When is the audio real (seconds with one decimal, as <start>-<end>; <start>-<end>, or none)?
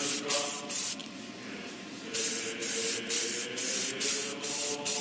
0.0-1.0; 1.7-5.0